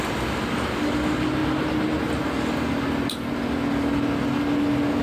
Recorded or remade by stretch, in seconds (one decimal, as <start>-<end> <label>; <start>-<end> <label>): 0.0-5.0 recorded